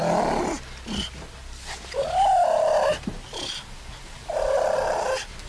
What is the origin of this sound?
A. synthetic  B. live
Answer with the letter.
B